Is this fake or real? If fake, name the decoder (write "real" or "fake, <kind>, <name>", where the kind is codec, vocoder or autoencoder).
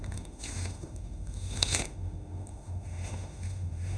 fake, autoencoder, DAC-VAE